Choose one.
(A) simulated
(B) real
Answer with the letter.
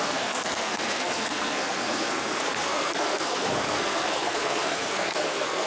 A